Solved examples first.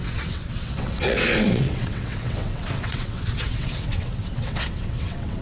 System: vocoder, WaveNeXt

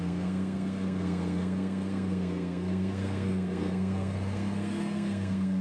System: codec, SNAC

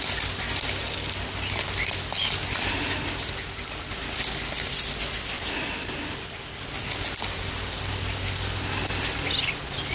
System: none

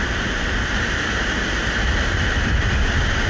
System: vocoder, BigVGAN v2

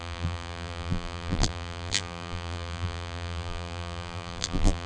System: vocoder, BigVGAN v2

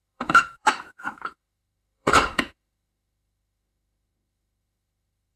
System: autoencoder, DAC-VAE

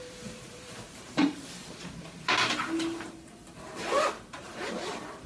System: vocoder, BigVGAN v2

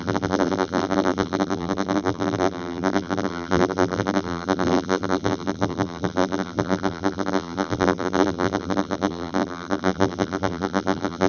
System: vocoder, BigVGAN v2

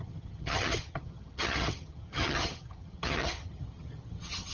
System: vocoder, HiFi-GAN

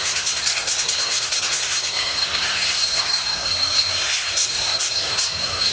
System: codec, SNAC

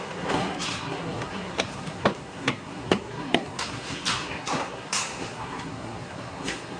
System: codec, SNAC